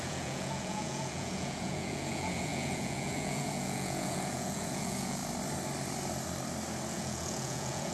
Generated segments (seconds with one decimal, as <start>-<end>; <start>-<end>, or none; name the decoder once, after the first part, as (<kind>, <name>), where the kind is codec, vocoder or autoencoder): 0.0-5.2 (vocoder, Vocos); 6.9-7.9